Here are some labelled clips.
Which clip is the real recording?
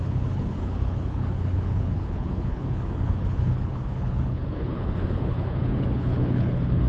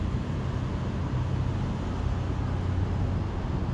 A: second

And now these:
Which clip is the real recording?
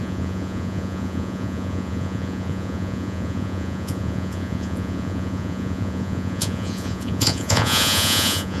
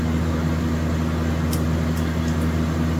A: second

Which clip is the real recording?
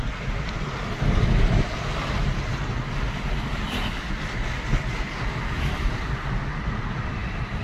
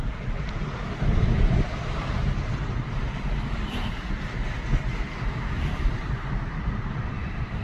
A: first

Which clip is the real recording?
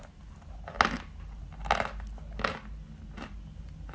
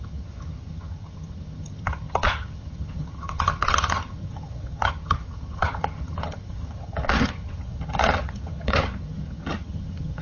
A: first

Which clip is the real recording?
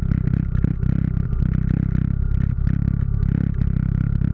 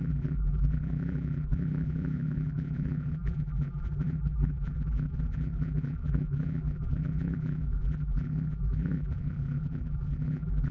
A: first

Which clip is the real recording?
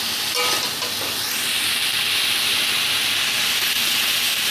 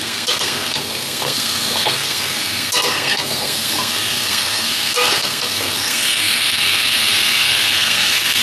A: first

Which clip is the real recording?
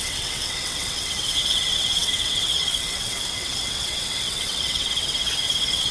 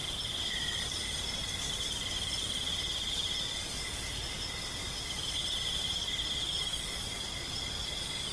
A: second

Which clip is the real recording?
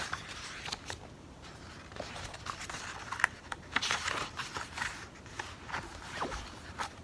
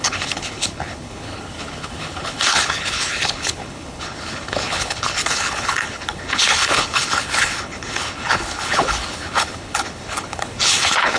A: first